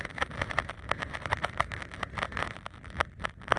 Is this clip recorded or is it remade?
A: remade